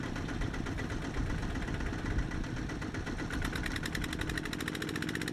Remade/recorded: recorded